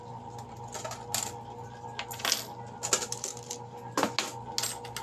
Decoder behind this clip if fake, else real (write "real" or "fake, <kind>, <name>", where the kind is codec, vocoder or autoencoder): real